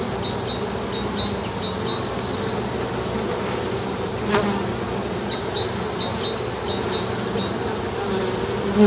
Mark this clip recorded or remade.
recorded